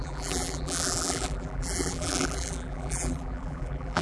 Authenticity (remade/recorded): remade